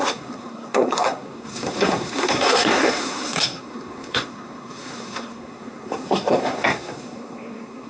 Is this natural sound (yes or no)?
no